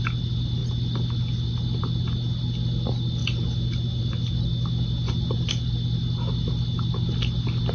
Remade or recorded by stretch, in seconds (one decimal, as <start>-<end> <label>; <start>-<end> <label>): 0.0-7.7 recorded